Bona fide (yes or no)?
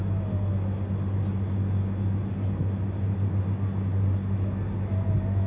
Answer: yes